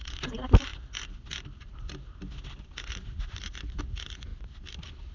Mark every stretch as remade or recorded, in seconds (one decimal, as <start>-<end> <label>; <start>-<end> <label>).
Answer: 0.0-0.7 recorded; 0.7-3.8 remade; 3.8-4.3 recorded; 4.3-5.1 remade